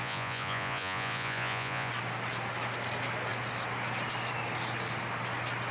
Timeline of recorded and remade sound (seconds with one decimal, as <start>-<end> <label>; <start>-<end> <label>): 0.0-1.9 remade; 1.9-5.7 recorded